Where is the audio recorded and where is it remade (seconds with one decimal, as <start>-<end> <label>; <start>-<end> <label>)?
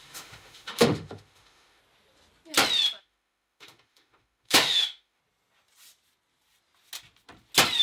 0.0-1.8 remade; 1.8-3.0 recorded; 3.0-5.2 remade; 5.2-7.8 recorded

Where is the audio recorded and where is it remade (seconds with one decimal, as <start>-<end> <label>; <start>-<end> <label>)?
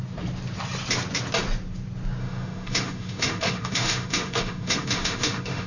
0.0-2.2 recorded; 2.2-5.7 remade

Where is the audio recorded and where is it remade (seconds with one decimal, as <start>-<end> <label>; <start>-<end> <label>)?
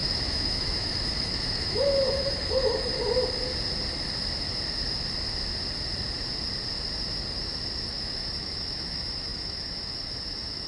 0.0-2.9 remade; 2.9-7.9 recorded; 7.9-10.7 remade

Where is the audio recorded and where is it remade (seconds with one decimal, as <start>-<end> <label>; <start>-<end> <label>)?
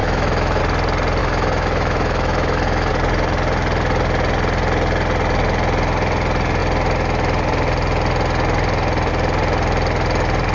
0.0-0.6 remade; 0.6-1.2 recorded; 1.2-2.9 remade; 2.9-10.5 recorded